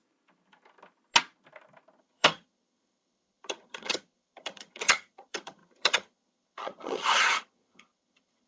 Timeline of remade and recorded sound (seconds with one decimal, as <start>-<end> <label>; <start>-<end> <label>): 0.0-2.0 recorded; 2.0-8.5 remade